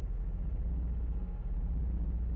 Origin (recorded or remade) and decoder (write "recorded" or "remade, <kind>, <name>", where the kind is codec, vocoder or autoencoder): recorded